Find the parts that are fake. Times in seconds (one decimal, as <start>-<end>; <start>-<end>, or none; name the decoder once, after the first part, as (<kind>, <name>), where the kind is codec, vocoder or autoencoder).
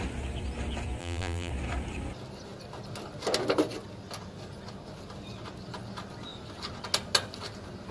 1.0-1.5 (vocoder, BigVGAN v2)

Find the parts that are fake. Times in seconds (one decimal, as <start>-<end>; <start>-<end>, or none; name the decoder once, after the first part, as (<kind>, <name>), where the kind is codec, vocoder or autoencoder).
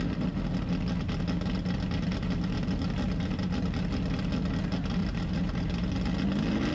5.0-5.9 (vocoder, BigVGAN v2)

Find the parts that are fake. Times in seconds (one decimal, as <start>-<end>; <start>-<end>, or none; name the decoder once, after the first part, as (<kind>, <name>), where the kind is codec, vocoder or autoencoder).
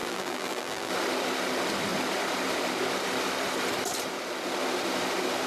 0.0-0.9 (vocoder, BigVGAN v2)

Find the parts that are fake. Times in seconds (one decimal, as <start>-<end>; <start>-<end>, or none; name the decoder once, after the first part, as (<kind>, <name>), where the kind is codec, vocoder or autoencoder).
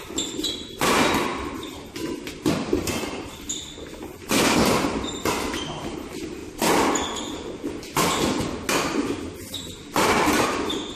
none